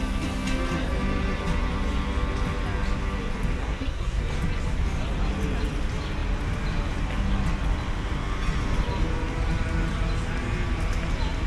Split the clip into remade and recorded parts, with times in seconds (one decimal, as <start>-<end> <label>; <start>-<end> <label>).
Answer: 0.0-3.6 recorded; 3.6-4.2 remade; 4.2-11.5 recorded